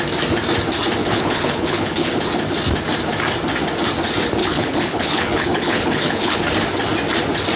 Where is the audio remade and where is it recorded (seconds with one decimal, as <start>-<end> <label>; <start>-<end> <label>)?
0.0-1.0 recorded; 1.0-2.1 remade; 2.1-4.4 recorded; 4.4-6.4 remade; 6.4-7.6 recorded